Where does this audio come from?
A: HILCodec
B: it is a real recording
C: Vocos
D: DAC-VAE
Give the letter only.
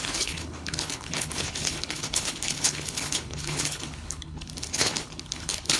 A